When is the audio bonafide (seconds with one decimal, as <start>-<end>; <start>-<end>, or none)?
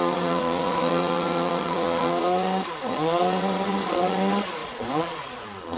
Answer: none